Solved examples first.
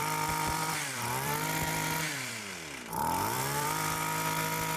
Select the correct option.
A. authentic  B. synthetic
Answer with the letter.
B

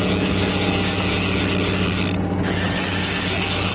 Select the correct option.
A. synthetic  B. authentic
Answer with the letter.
B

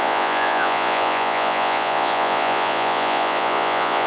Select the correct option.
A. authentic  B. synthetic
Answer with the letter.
B